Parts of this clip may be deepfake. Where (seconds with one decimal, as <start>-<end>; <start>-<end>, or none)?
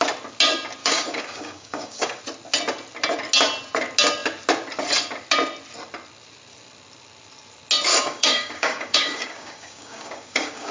0.8-2.2; 7.9-10.7